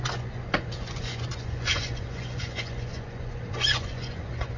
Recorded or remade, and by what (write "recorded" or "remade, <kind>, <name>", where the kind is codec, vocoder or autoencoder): remade, vocoder, Vocos